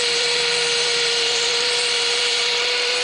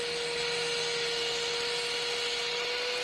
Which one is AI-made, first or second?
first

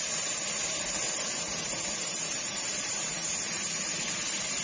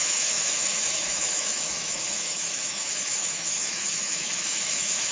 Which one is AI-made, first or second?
second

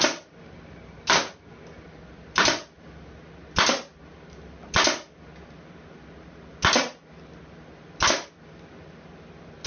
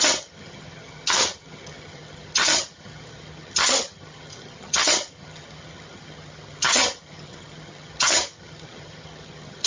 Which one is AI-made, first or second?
second